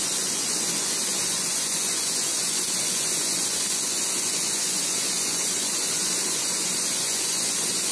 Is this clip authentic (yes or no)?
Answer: no